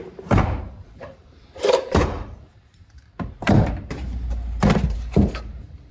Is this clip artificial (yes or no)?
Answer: yes